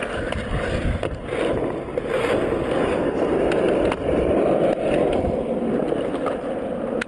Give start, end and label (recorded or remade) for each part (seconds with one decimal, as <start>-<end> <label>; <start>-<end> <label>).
0.0-7.1 recorded